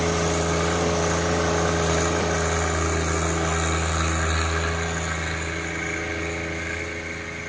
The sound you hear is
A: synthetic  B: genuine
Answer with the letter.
B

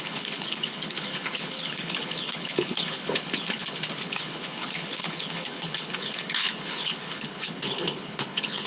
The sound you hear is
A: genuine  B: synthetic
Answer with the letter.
B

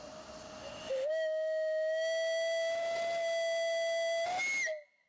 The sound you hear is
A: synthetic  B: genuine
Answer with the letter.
B